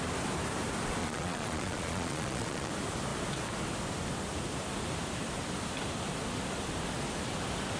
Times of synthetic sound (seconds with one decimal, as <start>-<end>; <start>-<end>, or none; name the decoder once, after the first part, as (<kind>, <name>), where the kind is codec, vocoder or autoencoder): 1.0-2.7 (vocoder, Vocos)